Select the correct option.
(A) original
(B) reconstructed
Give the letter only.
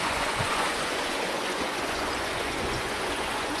B